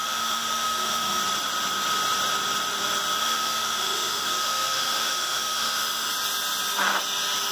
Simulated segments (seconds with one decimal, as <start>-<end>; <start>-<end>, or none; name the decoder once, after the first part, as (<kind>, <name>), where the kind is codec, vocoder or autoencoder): 0.0-1.2 (autoencoder, DAC-VAE); 3.2-6.1